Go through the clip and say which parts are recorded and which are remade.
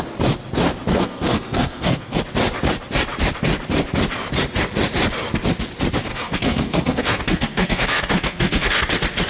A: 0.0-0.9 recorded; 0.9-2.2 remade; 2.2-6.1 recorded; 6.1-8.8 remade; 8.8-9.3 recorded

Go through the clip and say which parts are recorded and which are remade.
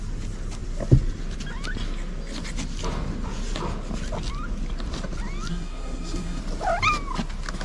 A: 0.0-5.5 recorded; 5.5-6.4 remade; 6.4-7.6 recorded